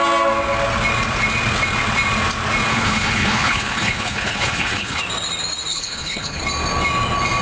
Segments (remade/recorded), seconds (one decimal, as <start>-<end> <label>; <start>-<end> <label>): 0.0-2.7 recorded; 2.7-5.0 remade; 5.0-5.7 recorded; 5.7-6.4 remade; 6.4-7.4 recorded